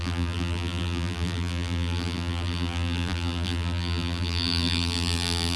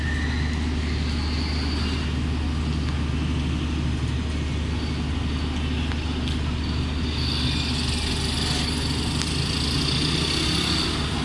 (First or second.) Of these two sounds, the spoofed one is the first